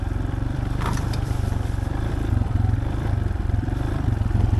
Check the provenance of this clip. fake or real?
fake